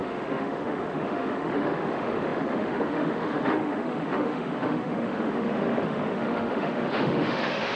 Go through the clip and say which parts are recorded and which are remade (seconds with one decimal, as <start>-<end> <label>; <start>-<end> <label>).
0.0-7.8 remade